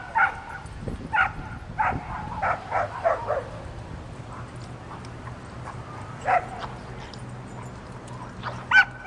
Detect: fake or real real